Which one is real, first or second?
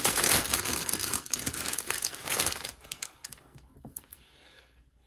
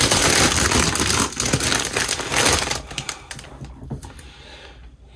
second